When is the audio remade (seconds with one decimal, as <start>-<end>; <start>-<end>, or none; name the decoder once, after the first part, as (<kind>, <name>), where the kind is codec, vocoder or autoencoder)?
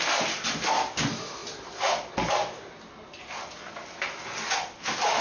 none